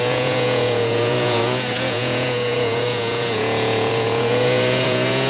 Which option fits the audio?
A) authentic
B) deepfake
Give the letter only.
B